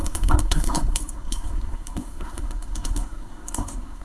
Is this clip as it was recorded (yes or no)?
no